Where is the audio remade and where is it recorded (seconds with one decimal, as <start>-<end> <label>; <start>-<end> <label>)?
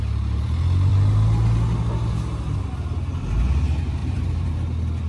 0.0-4.0 recorded; 4.0-4.6 remade; 4.6-5.1 recorded